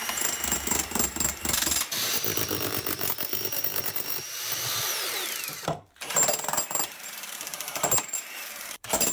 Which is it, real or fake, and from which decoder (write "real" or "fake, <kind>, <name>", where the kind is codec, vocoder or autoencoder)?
fake, vocoder, BigVGAN v2